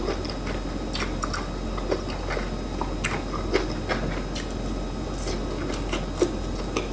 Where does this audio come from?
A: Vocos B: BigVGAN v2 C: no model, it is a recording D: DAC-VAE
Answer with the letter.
C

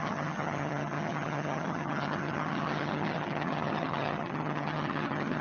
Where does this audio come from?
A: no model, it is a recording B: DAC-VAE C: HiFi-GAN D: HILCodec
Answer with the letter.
C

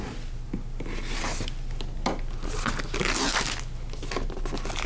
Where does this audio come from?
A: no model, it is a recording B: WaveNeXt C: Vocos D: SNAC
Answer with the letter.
A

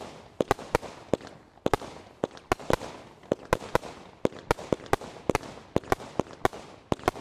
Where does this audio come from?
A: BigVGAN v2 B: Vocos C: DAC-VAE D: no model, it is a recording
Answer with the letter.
D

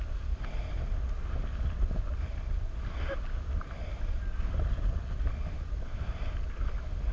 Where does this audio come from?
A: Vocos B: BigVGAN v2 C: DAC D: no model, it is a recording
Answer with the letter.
D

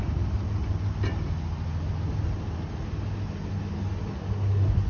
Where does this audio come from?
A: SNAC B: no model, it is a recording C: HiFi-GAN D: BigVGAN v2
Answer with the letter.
B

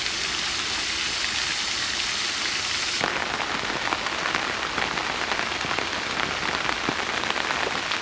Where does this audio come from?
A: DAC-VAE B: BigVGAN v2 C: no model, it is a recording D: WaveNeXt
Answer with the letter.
C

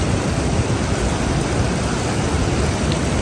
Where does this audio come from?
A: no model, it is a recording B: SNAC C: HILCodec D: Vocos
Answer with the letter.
A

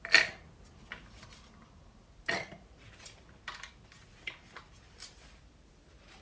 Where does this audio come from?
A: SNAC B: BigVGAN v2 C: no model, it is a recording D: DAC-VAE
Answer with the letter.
C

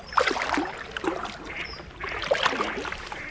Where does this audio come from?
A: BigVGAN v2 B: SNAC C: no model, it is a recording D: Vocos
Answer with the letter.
C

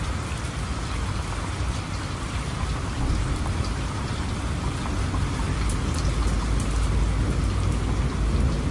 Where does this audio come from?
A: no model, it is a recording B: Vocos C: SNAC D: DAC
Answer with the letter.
A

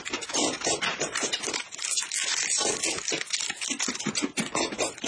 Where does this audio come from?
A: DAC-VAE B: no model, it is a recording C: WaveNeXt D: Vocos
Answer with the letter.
B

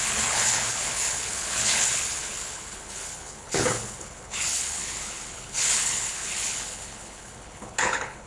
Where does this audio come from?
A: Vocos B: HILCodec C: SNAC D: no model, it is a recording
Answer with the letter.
B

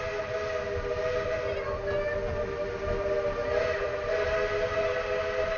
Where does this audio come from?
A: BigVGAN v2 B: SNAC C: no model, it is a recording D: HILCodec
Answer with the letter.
C